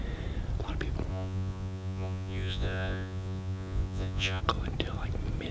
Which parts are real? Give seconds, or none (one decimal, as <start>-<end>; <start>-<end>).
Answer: 0.0-1.1; 4.4-5.5